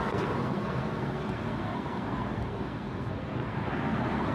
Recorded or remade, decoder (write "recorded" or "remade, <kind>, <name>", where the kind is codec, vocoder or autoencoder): remade, codec, SNAC